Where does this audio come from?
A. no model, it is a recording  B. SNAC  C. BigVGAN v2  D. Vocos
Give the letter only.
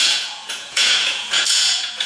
D